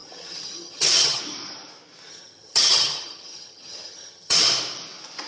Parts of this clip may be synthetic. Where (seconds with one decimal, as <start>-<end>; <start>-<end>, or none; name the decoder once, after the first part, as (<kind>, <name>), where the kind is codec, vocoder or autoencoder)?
0.0-1.2 (vocoder, HiFi-GAN); 2.1-4.4